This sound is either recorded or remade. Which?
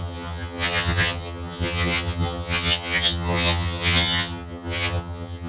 remade